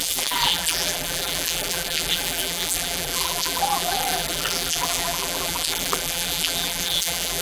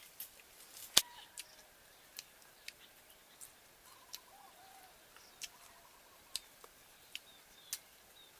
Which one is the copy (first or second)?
first